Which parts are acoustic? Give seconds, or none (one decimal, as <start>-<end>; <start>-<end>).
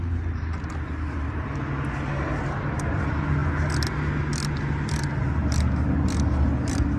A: 0.0-7.0